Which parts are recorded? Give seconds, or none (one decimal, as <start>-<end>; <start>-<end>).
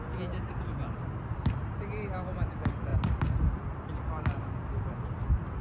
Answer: 0.0-5.6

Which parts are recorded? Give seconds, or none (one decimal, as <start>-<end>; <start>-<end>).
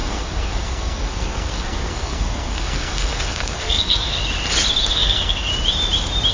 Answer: 4.2-4.8; 5.5-6.3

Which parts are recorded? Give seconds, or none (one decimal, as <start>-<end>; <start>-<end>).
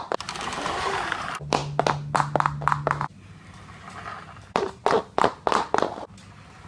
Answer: 0.0-6.7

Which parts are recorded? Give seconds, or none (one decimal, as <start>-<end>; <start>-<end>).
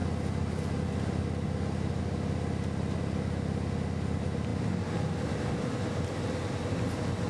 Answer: 0.0-7.3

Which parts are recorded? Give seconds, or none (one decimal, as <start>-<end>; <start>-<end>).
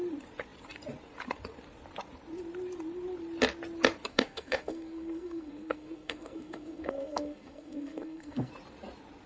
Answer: 0.0-4.1; 8.5-9.3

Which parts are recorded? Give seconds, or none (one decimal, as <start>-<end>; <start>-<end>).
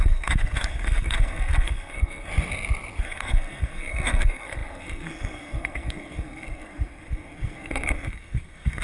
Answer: 2.3-3.0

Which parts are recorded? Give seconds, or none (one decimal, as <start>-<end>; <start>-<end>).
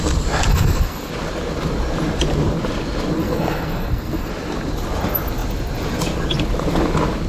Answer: 0.0-0.5; 1.1-3.2; 4.3-7.3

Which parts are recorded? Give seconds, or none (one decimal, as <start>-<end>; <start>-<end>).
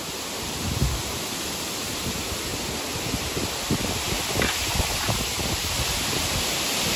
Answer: 0.0-7.0